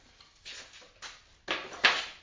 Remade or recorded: recorded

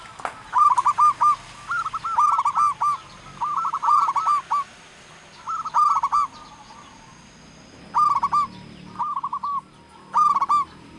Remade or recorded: recorded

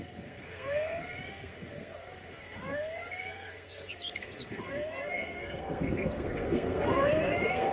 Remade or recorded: remade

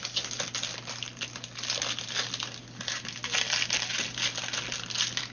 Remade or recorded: recorded